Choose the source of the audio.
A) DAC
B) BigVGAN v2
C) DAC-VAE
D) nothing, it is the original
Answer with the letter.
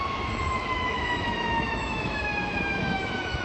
C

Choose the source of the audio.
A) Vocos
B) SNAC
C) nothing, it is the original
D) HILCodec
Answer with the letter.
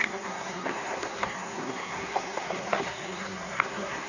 B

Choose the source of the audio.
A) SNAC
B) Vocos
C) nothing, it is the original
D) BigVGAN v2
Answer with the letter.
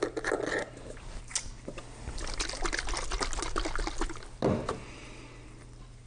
C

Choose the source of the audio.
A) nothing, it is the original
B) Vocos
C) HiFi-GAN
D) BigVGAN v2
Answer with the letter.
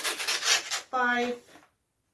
A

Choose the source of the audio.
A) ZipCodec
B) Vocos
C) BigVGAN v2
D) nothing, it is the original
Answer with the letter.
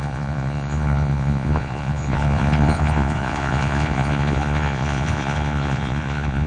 B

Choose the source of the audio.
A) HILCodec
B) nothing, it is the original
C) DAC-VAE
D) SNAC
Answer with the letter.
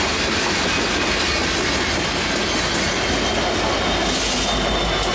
B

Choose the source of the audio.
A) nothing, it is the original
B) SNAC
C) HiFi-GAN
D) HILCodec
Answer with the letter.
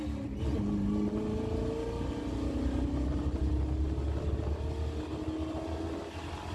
A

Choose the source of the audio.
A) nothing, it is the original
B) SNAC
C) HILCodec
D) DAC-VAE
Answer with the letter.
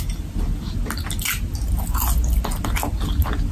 A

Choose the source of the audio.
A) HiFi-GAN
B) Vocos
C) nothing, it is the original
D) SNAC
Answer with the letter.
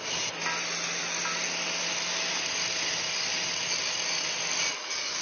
C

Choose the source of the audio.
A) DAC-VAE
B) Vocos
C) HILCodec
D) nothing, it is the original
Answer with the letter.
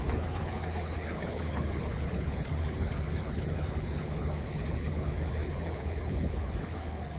C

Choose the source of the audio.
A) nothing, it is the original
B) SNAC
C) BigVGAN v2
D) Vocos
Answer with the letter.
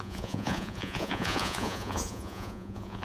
D